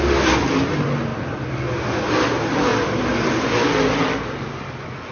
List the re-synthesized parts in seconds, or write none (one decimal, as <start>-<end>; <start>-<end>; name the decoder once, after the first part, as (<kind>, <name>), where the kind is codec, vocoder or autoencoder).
none

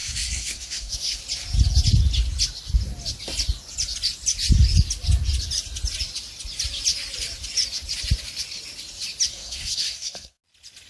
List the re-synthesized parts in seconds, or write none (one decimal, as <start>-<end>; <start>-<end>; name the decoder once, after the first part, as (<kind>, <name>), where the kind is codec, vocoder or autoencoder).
0.0-1.2 (codec, SNAC); 9.3-10.4

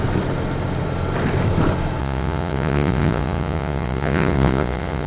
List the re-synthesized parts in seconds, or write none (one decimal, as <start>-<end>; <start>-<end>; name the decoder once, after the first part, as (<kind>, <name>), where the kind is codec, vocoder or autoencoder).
2.0-5.1 (vocoder, Vocos)

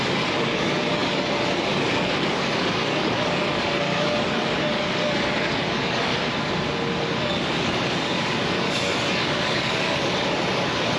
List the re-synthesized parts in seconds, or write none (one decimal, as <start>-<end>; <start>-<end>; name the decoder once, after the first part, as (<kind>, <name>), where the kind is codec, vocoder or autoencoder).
0.0-6.1 (codec, DAC); 7.0-11.0

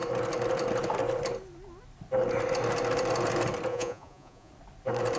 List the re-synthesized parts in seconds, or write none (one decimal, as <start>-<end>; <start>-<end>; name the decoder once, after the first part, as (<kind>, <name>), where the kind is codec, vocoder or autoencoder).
3.7-4.5 (vocoder, Vocos)

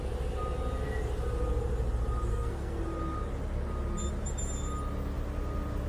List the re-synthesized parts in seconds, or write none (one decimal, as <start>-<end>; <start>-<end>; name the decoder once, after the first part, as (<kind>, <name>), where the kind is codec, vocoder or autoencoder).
2.3-2.8 (codec, SNAC)